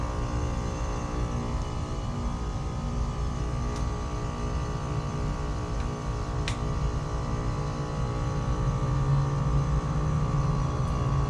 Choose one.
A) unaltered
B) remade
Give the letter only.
A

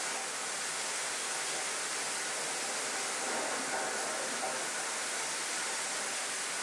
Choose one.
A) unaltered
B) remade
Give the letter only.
A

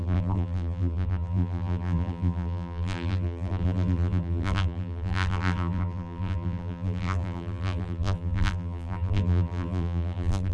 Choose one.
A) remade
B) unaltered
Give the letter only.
A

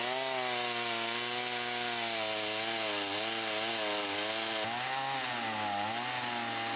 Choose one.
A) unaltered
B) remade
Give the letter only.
A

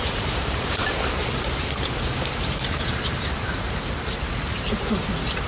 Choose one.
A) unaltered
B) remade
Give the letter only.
B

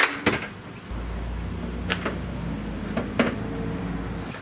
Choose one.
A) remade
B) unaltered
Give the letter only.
B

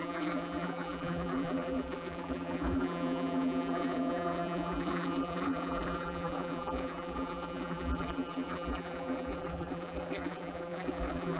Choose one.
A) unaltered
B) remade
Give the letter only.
B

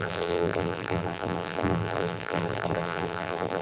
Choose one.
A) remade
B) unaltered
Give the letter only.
A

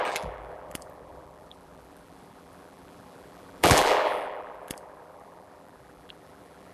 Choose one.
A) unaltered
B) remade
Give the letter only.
B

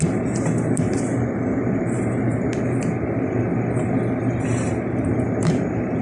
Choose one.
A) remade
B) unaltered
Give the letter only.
A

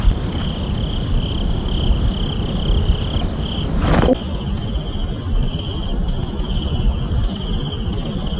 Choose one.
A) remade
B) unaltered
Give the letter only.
B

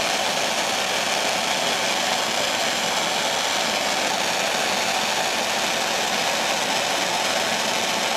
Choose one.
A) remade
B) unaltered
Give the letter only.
B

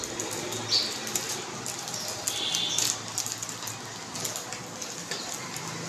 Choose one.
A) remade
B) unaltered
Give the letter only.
B